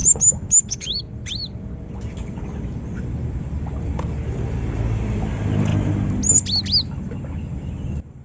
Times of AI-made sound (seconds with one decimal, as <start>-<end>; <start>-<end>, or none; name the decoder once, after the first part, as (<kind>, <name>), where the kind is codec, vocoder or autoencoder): 0.0-1.0 (autoencoder, DAC-VAE)